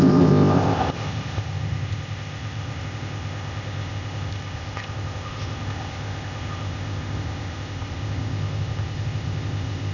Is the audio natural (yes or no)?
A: no